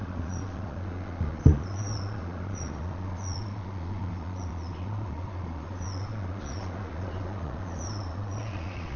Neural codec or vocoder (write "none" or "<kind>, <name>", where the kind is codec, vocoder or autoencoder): vocoder, Vocos